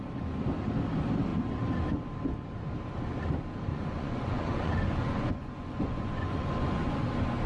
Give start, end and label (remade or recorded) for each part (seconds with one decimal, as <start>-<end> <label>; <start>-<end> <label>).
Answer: 0.0-3.7 recorded; 3.7-7.0 remade; 7.0-7.5 recorded